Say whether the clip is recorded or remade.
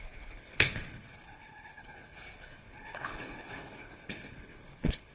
remade